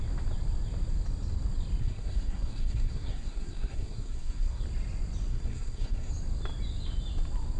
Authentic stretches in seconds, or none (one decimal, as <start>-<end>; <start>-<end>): 0.0-1.8; 4.6-5.3; 6.1-7.6